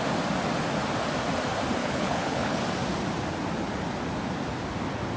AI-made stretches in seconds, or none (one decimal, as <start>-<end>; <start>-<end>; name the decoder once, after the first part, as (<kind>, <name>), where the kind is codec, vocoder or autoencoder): 1.8-2.6 (codec, HILCodec)